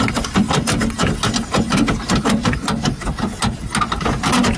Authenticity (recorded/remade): recorded